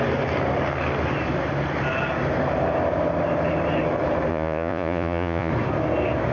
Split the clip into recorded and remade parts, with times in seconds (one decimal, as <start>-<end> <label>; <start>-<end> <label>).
0.0-4.3 recorded; 4.3-5.5 remade; 5.5-6.3 recorded